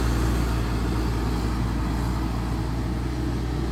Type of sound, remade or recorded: recorded